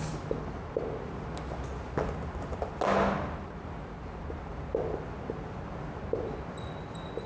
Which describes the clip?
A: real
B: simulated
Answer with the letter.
A